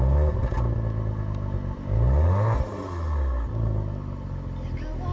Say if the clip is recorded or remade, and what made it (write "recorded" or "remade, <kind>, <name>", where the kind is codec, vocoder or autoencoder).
recorded